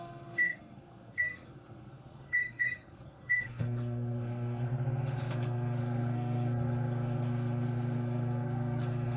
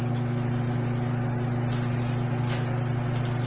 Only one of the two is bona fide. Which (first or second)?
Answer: second